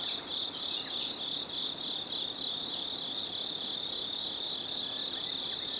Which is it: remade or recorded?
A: recorded